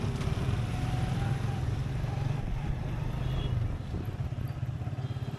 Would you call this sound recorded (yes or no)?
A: yes